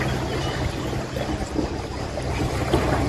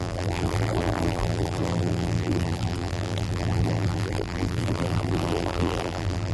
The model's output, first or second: second